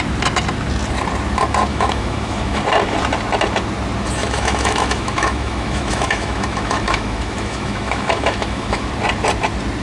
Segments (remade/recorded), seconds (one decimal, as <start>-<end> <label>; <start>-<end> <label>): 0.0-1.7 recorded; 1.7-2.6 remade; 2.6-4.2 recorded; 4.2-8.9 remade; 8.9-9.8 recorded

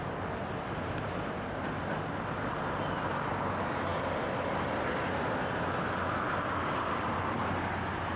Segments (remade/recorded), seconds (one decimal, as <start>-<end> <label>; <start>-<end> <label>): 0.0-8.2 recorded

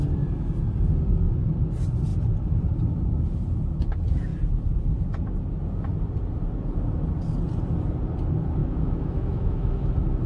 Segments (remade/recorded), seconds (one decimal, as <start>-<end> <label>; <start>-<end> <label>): 0.0-8.6 recorded; 8.6-9.9 remade; 9.9-10.3 recorded

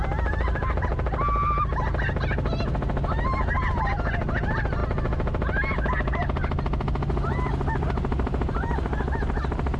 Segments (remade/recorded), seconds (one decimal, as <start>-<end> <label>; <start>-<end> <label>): 0.0-9.8 recorded

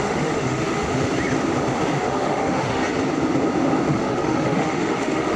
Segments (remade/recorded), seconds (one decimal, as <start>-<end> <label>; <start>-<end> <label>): 0.0-1.0 remade; 1.0-2.0 recorded; 2.0-2.8 remade; 2.8-3.9 recorded; 3.9-5.4 remade

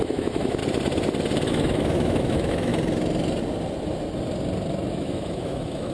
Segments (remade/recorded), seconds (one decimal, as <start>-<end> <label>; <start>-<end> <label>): 0.0-0.6 remade; 0.6-1.5 recorded; 1.5-2.7 remade; 2.7-4.9 recorded; 4.9-5.9 remade

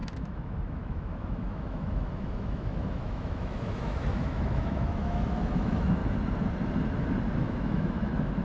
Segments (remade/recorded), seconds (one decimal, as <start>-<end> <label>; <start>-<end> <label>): 0.0-6.0 remade; 6.0-7.4 recorded; 7.4-8.4 remade

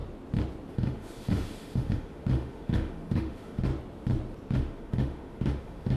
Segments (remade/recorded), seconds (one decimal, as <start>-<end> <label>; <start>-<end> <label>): 0.0-0.7 recorded; 0.7-3.7 remade; 3.7-4.5 recorded; 4.5-6.0 remade